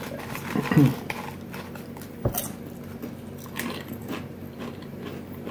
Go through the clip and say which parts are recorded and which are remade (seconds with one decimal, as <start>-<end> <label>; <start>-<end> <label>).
0.0-5.5 recorded